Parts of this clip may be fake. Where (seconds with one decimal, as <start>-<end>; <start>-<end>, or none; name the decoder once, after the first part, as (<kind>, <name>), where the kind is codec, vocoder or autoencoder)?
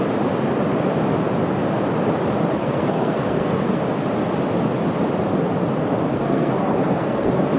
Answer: 2.6-3.8 (codec, SNAC); 6.1-7.6